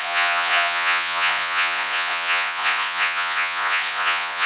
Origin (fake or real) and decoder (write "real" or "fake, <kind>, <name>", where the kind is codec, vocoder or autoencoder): fake, vocoder, Vocos